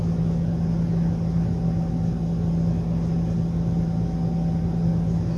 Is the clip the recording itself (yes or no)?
yes